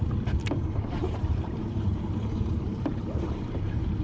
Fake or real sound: fake